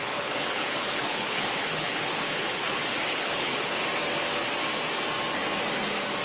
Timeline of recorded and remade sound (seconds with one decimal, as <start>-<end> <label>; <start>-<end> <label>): 0.0-3.7 remade; 3.7-6.2 recorded